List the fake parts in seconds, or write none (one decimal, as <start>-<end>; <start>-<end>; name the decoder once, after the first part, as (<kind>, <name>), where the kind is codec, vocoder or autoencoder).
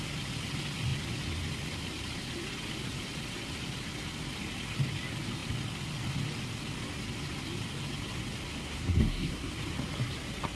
8.6-9.5 (codec, SNAC)